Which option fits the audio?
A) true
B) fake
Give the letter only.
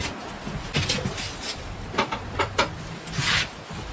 A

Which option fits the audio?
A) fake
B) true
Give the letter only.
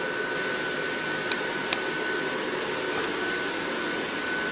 B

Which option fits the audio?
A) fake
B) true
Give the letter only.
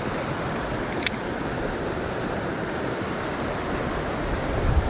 B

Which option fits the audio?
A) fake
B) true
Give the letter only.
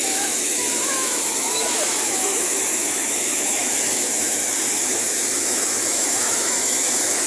A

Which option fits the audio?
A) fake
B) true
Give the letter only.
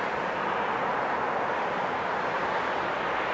B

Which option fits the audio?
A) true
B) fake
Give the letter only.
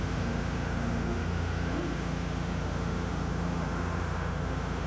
B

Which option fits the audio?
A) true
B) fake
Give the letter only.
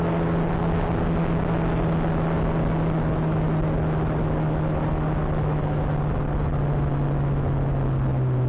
A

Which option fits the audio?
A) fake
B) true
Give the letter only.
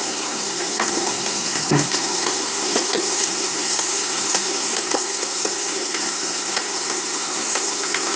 A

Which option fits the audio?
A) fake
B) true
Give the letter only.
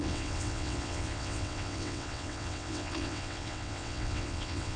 A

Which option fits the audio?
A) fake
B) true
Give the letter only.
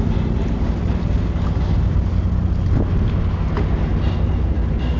B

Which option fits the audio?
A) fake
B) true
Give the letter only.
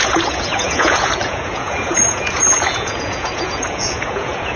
A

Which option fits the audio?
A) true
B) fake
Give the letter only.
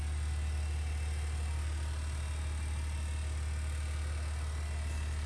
A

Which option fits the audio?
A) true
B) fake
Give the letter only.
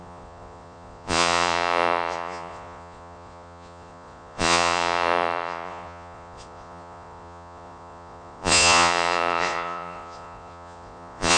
B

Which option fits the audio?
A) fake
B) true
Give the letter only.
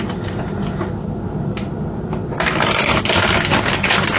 B